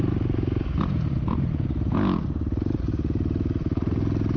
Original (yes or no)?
yes